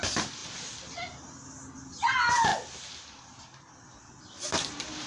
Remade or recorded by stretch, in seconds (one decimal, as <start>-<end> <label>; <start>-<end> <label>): 0.0-5.1 recorded